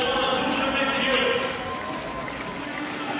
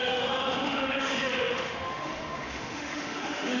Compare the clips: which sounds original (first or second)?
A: first